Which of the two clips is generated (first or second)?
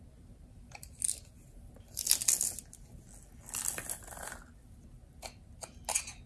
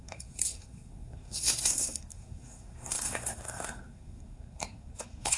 second